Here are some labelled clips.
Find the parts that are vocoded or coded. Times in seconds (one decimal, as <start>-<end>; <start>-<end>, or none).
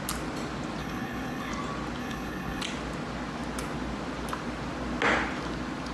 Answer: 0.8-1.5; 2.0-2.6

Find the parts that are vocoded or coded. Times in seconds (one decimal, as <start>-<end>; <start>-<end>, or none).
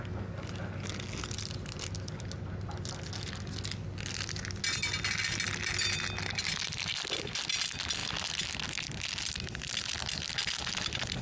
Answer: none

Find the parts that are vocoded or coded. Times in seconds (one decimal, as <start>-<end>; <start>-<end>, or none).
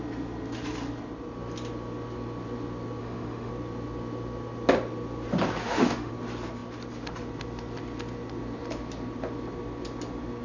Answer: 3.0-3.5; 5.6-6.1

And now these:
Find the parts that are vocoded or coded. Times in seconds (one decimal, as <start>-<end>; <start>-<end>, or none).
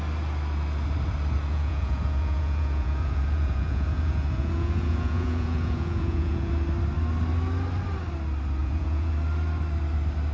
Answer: 1.5-6.5; 8.6-9.1